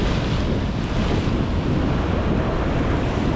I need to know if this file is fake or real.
real